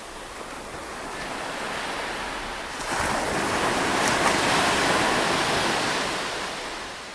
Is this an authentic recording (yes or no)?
yes